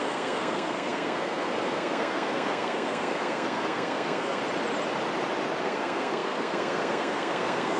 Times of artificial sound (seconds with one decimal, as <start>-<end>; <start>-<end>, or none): 0.0-4.4; 5.6-7.8